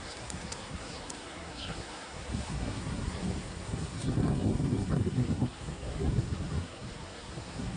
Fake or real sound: fake